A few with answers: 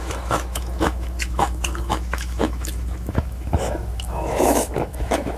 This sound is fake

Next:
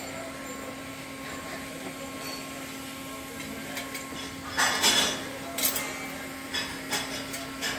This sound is real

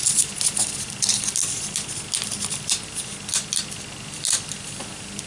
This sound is real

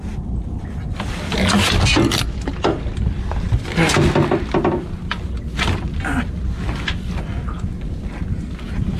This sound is real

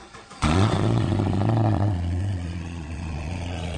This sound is fake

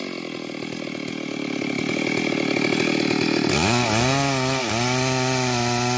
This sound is real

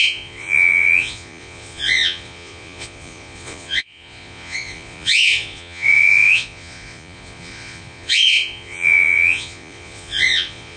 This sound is fake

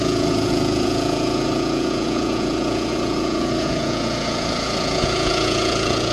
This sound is fake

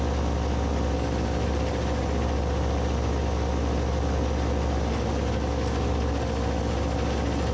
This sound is real